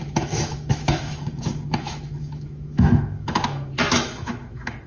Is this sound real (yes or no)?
no